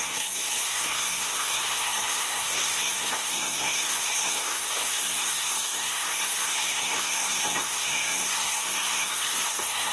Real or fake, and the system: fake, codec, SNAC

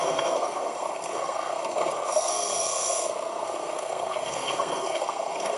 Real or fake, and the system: fake, codec, SNAC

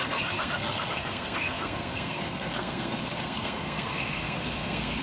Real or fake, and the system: fake, codec, SNAC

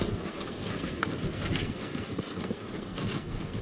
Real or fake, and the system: fake, codec, SNAC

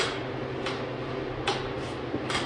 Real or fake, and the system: real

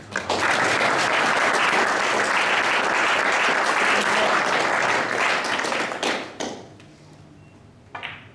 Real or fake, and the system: real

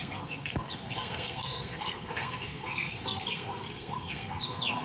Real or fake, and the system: fake, codec, SNAC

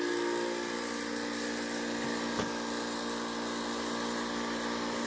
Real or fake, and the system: real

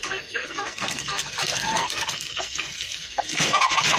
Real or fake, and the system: fake, codec, SNAC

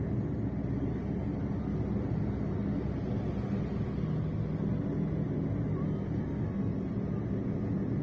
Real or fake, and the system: real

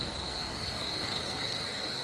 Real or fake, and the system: fake, codec, SNAC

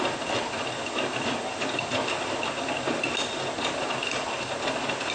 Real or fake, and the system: real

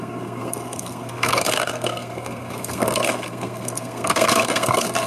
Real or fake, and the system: fake, codec, SNAC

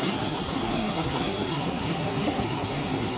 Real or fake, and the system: fake, codec, SNAC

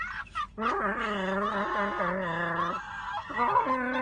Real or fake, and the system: real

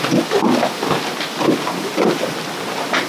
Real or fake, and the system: real